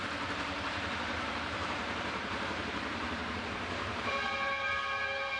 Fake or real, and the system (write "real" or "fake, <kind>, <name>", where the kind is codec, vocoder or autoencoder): fake, vocoder, BigVGAN v2